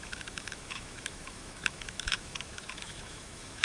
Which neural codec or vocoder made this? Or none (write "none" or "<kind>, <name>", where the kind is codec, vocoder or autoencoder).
autoencoder, DAC-VAE